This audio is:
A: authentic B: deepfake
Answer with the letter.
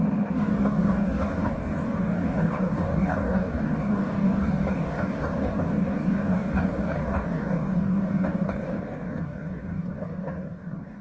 B